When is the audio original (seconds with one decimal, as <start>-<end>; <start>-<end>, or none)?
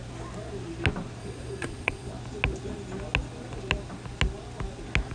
0.0-1.2; 2.1-5.1